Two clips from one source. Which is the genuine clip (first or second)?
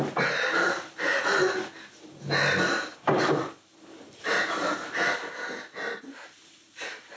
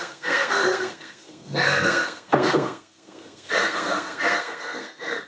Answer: first